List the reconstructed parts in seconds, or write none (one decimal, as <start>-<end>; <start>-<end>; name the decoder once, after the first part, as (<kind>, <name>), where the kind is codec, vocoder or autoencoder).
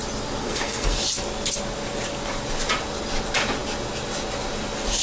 0.4-1.0 (codec, SNAC)